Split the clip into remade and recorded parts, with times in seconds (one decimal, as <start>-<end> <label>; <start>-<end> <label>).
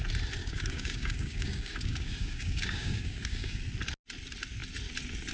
0.0-0.4 recorded; 0.4-3.6 remade; 3.6-5.3 recorded